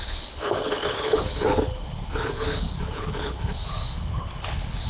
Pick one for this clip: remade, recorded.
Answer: remade